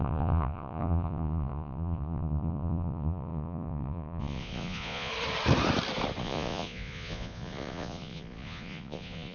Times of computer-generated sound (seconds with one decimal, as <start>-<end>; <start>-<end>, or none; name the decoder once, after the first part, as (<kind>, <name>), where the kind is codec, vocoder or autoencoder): 0.0-5.1 (vocoder, Vocos); 6.2-9.3